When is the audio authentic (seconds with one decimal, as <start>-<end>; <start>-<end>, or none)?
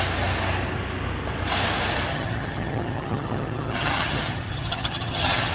0.0-2.1